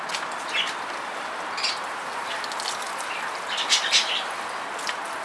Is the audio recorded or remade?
recorded